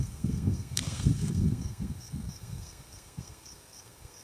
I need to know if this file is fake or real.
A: fake